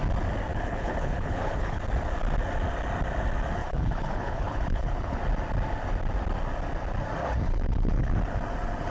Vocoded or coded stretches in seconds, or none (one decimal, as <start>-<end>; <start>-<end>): 0.5-1.8; 3.6-5.2; 7.2-8.1